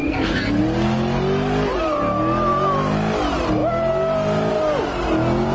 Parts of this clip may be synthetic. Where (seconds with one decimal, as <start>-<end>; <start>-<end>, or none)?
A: 0.0-0.6